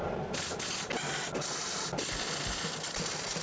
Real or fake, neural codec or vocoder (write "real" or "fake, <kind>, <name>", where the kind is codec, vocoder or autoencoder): real